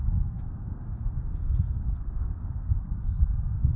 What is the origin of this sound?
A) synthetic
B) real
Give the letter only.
A